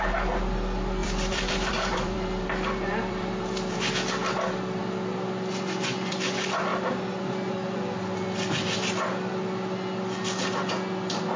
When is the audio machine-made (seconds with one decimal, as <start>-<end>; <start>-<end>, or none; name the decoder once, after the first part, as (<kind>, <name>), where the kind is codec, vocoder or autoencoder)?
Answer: 1.0-3.8 (vocoder, BigVGAN v2)